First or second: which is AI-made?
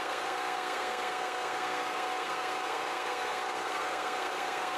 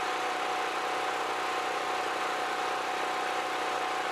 first